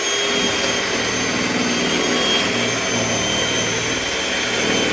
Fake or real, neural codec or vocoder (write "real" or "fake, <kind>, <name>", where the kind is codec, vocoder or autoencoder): real